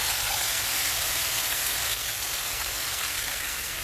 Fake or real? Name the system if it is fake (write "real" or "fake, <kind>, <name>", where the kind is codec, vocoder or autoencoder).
fake, codec, SNAC